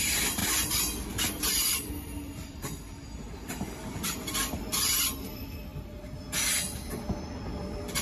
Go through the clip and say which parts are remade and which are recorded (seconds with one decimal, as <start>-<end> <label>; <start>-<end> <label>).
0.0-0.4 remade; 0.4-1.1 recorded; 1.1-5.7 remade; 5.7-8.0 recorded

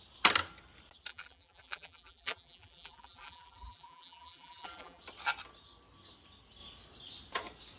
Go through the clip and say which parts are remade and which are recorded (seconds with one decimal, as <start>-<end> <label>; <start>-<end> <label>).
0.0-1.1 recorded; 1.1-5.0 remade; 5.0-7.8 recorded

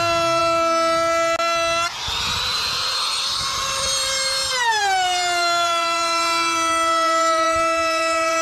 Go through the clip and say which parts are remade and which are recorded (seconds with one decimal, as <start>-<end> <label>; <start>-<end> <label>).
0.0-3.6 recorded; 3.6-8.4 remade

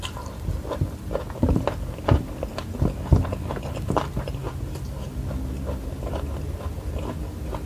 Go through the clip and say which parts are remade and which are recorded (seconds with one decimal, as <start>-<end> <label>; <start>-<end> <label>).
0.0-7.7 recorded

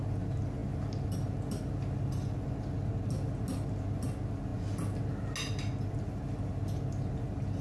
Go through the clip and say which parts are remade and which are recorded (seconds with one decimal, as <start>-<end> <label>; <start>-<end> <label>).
0.0-7.6 recorded

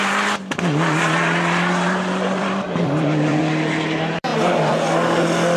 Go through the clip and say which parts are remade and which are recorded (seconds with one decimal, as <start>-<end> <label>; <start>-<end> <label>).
0.0-4.3 remade; 4.3-5.6 recorded

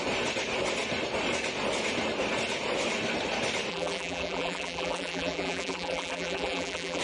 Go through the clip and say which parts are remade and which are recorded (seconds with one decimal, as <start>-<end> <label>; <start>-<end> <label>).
0.0-3.7 recorded; 3.7-7.0 remade